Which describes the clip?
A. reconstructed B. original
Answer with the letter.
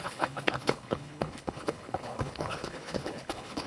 A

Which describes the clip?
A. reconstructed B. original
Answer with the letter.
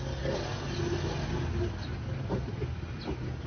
B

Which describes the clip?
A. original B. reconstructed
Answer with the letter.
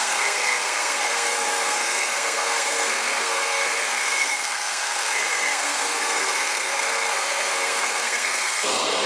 B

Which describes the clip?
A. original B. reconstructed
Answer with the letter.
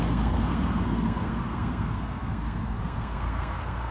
B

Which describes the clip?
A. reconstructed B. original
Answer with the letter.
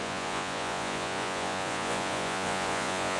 A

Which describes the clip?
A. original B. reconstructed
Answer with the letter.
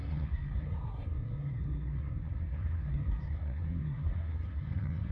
B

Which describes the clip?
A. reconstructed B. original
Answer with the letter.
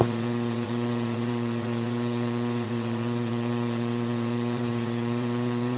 A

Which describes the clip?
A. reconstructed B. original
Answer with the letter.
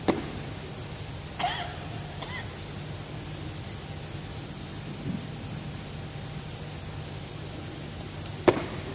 B